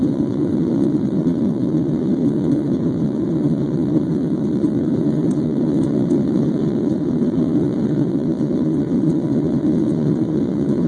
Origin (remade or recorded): remade